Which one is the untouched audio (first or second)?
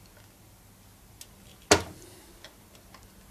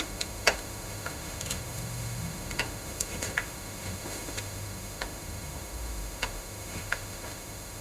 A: first